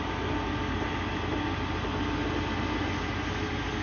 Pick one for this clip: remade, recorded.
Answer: recorded